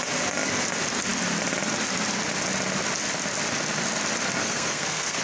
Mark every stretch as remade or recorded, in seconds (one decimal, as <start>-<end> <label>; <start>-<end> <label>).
0.0-4.4 recorded; 4.4-5.2 remade